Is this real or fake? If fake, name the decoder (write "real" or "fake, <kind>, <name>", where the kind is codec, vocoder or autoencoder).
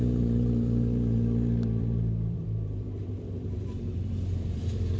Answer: fake, vocoder, BigVGAN v2